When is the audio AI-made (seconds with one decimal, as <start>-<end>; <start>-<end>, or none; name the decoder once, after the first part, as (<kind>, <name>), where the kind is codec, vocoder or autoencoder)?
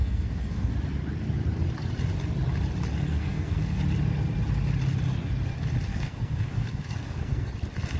0.0-0.7 (codec, SNAC); 3.1-3.8; 5.9-7.5